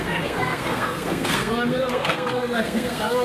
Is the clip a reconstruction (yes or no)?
yes